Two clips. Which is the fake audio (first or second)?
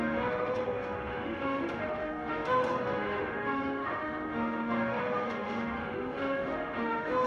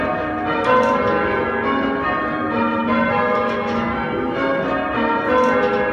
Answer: first